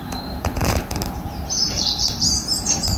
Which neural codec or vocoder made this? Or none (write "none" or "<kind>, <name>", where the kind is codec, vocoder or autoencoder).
vocoder, BigVGAN v2